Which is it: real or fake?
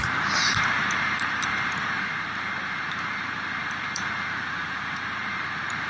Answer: fake